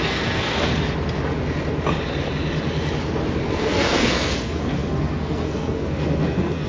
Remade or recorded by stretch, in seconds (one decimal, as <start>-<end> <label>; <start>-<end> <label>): 0.0-0.7 remade; 0.7-3.5 recorded; 3.5-6.7 remade